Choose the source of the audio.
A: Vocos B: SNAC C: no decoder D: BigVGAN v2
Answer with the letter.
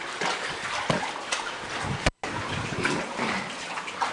C